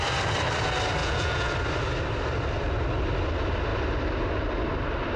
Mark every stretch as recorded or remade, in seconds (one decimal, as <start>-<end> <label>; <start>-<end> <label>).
0.0-1.0 recorded; 1.0-1.5 remade; 1.5-5.2 recorded